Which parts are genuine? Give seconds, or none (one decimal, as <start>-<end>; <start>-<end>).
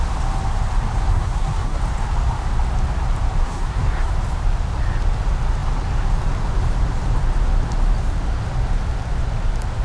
0.0-1.1; 1.8-3.4; 4.1-9.8